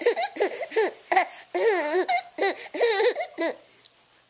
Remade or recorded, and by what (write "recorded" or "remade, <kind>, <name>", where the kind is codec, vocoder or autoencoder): recorded